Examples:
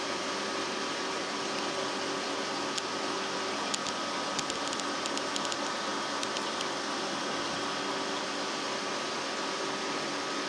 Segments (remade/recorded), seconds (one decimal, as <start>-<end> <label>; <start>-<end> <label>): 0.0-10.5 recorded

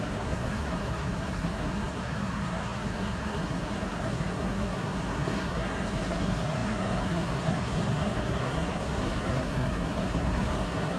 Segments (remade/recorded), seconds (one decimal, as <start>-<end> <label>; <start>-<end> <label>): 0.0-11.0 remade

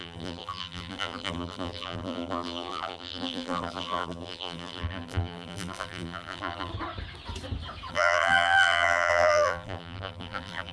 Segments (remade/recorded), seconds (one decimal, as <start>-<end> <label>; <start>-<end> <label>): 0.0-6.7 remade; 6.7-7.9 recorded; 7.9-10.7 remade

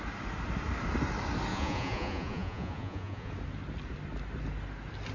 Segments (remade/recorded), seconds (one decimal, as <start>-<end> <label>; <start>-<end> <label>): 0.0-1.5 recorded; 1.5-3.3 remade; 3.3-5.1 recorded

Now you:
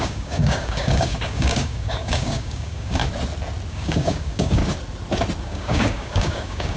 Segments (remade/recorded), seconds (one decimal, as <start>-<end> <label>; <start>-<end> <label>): 0.0-3.0 remade; 3.0-3.7 recorded; 3.7-4.6 remade; 4.6-5.4 recorded; 5.4-6.8 remade

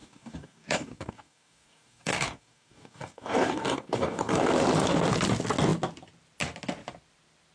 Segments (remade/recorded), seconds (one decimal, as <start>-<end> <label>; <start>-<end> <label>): 0.0-4.5 remade; 4.5-7.5 recorded

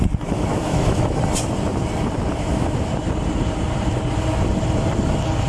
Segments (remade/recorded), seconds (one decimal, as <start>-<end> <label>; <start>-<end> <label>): 0.0-0.5 recorded; 0.5-1.2 remade; 1.2-2.3 recorded; 2.3-2.9 remade; 2.9-5.5 recorded

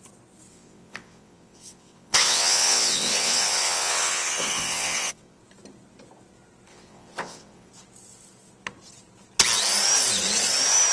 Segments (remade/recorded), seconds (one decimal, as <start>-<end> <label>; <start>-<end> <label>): 0.0-0.5 recorded; 0.5-5.4 remade; 5.4-6.7 recorded; 6.7-7.7 remade; 7.7-10.9 recorded